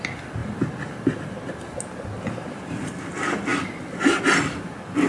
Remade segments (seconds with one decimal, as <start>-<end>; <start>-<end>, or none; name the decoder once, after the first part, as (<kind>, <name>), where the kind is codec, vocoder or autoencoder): none

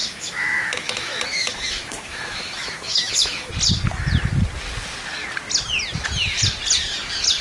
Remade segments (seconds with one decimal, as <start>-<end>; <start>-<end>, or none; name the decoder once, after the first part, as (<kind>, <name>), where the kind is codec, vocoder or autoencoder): 0.0-3.5 (autoencoder, DAC-VAE)

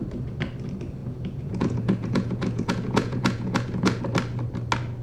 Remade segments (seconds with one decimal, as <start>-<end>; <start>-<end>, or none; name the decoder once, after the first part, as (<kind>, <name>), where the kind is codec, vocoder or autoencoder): 1.0-4.0 (vocoder, Vocos)

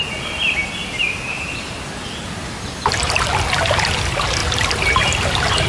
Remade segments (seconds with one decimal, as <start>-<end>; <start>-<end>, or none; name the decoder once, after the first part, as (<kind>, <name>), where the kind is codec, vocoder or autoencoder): none

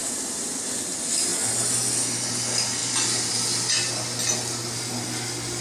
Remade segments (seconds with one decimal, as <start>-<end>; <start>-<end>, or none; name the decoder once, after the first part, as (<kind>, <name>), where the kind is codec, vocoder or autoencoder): 0.0-0.8 (vocoder, BigVGAN v2)

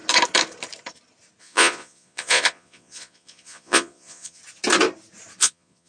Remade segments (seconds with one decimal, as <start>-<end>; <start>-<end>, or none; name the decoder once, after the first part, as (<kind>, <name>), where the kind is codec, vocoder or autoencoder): 1.4-4.4 (vocoder, Vocos); 5.4-5.9

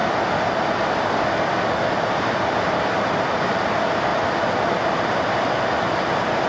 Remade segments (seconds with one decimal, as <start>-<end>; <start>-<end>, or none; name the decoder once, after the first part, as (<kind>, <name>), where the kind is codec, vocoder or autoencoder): none

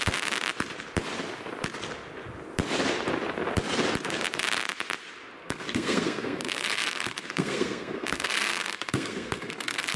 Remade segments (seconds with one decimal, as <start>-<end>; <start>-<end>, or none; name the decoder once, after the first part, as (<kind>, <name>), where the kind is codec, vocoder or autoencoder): 5.4-10.0 (codec, SNAC)